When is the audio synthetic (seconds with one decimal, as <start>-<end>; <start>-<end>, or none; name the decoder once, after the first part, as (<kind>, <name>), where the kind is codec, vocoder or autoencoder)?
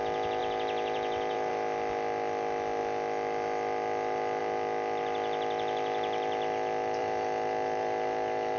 0.4-1.5 (vocoder, BigVGAN v2); 7.0-8.6